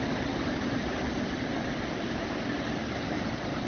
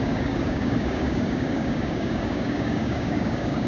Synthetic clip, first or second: second